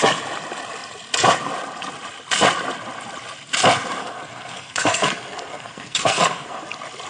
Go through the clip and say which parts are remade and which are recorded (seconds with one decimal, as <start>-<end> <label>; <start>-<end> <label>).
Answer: 0.0-4.0 recorded; 4.0-6.6 remade; 6.6-7.1 recorded